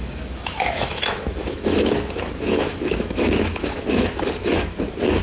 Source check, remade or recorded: remade